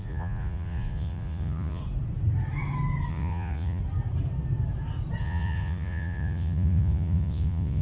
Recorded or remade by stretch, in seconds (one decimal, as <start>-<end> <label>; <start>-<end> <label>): 0.0-1.8 remade; 1.8-3.1 recorded; 3.1-3.8 remade; 3.8-5.2 recorded; 5.2-7.8 remade